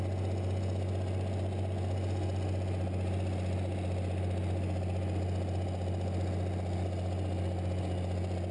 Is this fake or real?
real